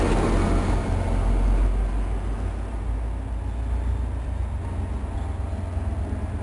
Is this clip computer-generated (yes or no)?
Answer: no